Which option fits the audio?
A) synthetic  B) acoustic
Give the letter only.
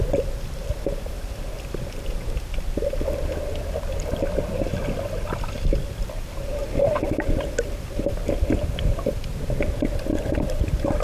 B